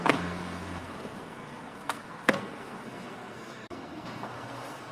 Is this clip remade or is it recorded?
remade